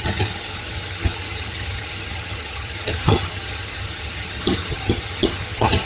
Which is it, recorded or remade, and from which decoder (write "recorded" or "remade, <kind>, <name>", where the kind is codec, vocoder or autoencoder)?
remade, vocoder, HiFi-GAN